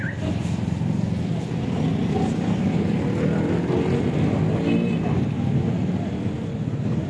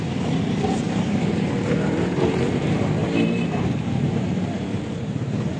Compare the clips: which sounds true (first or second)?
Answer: first